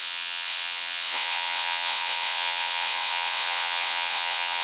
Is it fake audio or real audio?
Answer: fake